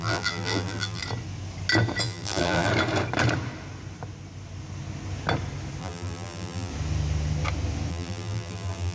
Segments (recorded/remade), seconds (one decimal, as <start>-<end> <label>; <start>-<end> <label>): 0.0-1.0 remade; 1.0-2.0 recorded; 2.0-2.7 remade; 2.7-5.8 recorded; 5.8-6.7 remade; 6.7-7.9 recorded; 7.9-8.9 remade